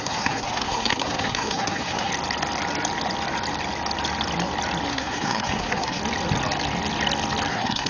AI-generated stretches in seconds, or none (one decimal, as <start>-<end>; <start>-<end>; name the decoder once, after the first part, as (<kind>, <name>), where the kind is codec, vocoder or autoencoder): 0.0-2.1 (codec, SNAC); 4.9-6.0; 7.5-7.9